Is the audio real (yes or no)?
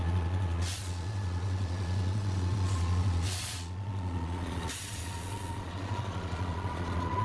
no